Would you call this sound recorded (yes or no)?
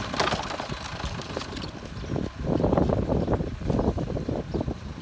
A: yes